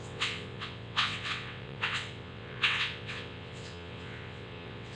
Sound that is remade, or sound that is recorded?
remade